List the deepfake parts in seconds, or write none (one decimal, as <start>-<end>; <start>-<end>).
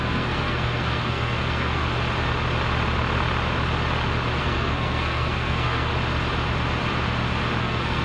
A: 0.0-1.8; 4.4-5.9; 7.6-8.0